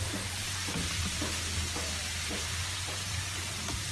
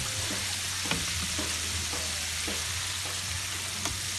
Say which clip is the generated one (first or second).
first